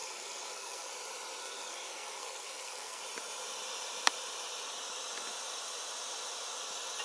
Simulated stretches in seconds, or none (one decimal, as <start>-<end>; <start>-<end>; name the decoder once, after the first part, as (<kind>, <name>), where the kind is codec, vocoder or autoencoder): 0.0-0.9 (codec, SNAC); 1.4-3.0